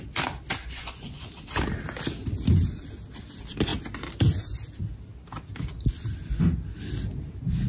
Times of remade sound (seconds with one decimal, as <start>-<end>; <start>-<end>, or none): 0.6-1.3